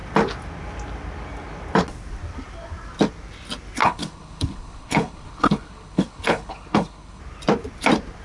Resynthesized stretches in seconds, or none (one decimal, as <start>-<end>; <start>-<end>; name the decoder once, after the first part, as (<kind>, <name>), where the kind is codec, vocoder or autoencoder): 3.8-7.2 (codec, HILCodec)